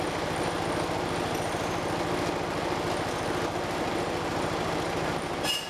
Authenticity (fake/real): real